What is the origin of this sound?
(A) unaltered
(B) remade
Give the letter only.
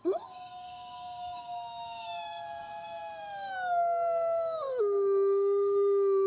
B